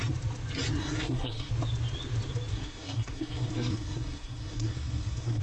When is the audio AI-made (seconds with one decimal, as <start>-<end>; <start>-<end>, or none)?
0.8-1.5; 2.5-5.4